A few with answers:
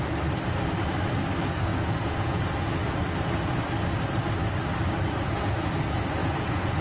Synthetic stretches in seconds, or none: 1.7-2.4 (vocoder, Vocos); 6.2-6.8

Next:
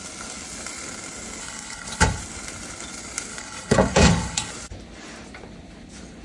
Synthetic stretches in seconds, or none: 1.4-2.2 (codec, HILCodec); 3.3-4.5

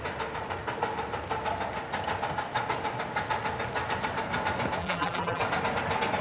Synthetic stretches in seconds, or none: 4.8-5.4 (vocoder, BigVGAN v2)